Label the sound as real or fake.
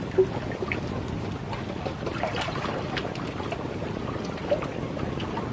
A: real